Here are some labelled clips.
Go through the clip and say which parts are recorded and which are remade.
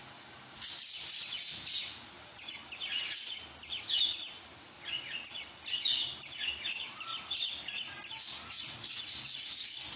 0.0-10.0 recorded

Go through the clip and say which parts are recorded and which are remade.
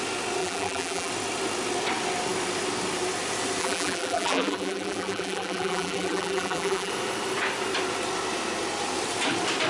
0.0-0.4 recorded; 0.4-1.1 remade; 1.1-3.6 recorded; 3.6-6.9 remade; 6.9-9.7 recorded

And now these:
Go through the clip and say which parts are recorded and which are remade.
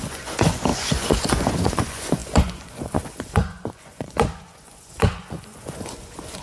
0.0-6.4 remade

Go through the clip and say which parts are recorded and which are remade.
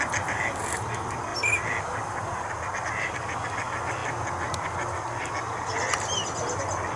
0.0-7.0 recorded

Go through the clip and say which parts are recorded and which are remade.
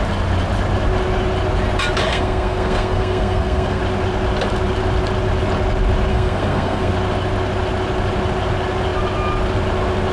0.0-2.1 recorded; 2.1-3.8 remade; 3.8-6.1 recorded; 6.1-6.9 remade; 6.9-10.1 recorded